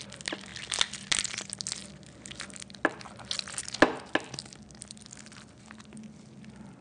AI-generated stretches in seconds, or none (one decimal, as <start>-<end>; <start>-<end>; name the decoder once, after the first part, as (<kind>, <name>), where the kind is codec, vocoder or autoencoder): none